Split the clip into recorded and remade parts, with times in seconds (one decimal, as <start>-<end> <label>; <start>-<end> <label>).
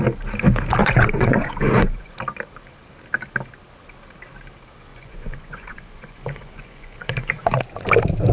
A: 0.0-0.8 recorded; 0.8-2.1 remade; 2.1-4.9 recorded; 4.9-7.6 remade; 7.6-8.3 recorded